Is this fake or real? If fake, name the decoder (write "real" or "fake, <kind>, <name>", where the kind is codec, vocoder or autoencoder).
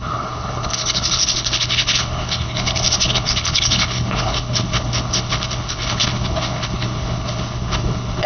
fake, codec, HILCodec